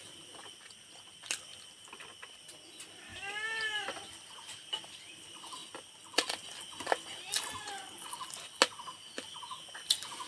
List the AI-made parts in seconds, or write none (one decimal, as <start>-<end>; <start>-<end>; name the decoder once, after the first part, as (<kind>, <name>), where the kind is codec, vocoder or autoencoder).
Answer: none